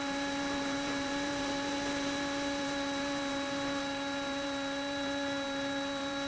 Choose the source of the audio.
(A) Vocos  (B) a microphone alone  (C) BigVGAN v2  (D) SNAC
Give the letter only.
C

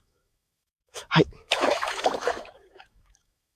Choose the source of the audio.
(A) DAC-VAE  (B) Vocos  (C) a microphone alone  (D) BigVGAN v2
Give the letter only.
A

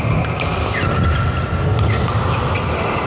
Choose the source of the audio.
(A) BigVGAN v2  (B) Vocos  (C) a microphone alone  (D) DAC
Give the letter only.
C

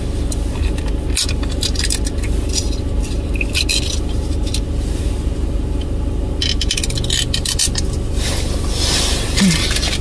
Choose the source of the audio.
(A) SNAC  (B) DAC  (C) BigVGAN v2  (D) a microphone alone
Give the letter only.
D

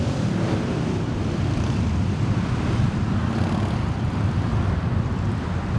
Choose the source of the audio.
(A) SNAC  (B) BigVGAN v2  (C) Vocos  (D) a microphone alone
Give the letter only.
B